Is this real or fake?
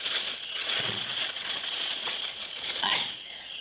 fake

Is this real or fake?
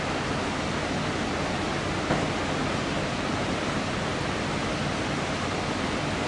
real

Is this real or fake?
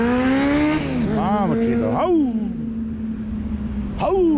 real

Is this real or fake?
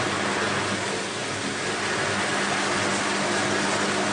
real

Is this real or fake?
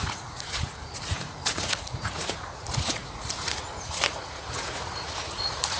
fake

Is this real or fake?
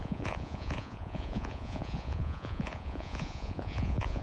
fake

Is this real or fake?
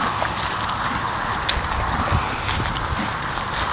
real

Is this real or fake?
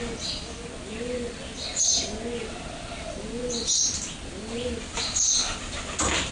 real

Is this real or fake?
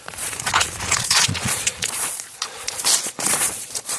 fake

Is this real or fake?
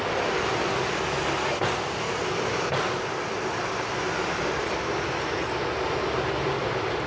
real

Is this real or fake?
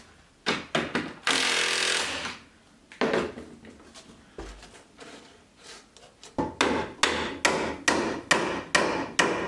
real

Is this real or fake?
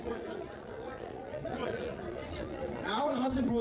fake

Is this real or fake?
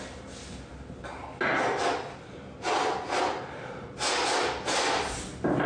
real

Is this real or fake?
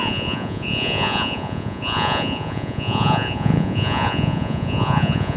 fake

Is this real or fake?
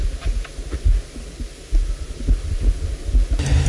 real